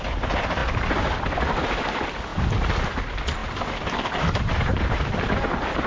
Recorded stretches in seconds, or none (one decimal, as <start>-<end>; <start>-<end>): 0.0-5.9